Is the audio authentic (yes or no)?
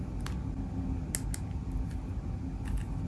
yes